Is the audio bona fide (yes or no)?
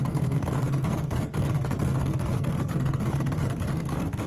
no